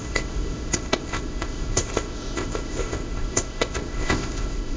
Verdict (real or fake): fake